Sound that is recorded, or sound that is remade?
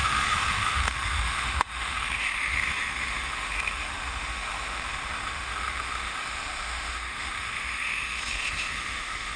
remade